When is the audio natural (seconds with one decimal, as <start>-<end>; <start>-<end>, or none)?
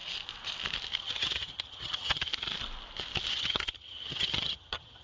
0.0-1.0; 2.3-3.3